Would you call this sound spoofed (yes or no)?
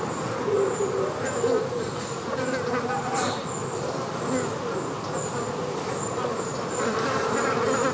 no